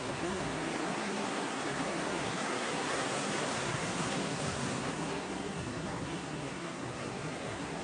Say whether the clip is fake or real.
fake